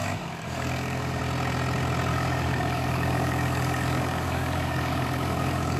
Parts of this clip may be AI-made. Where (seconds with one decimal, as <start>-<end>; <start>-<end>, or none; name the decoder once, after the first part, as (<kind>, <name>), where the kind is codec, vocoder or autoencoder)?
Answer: 0.0-1.2 (codec, DAC); 2.1-5.8